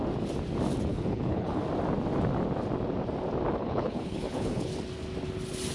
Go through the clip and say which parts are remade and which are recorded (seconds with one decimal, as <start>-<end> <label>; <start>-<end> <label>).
0.0-0.9 recorded; 0.9-1.6 remade; 1.6-3.6 recorded; 3.6-4.7 remade; 4.7-5.7 recorded